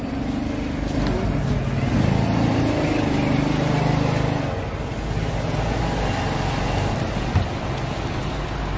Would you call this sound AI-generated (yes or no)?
no